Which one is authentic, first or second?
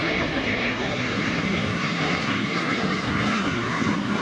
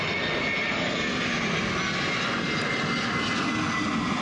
second